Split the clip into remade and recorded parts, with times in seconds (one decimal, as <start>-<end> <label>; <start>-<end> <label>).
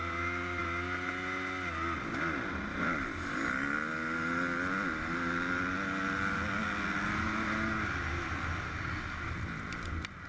0.0-10.3 recorded